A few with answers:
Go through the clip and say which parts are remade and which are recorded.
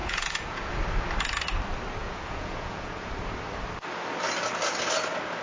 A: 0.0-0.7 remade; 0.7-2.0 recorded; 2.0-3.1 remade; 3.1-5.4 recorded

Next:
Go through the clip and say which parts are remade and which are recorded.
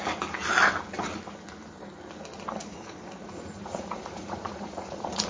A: 0.0-2.6 recorded; 2.6-5.3 remade